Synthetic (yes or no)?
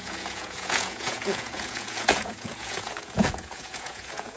yes